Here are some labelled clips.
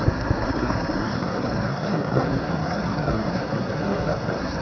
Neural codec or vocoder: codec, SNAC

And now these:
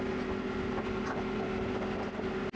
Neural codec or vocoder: none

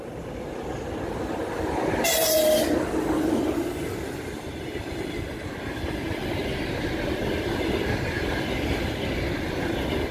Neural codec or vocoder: none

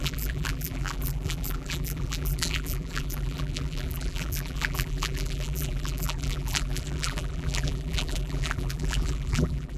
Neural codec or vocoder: vocoder, BigVGAN v2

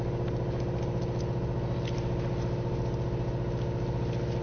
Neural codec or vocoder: none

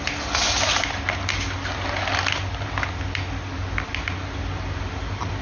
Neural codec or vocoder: none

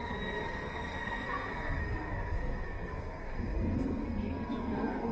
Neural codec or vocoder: codec, SNAC